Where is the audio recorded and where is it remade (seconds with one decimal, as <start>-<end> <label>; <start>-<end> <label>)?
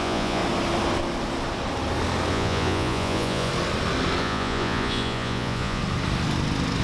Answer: 0.0-0.4 remade; 0.4-2.3 recorded; 2.3-3.5 remade; 3.5-4.2 recorded; 4.2-5.8 remade; 5.8-6.8 recorded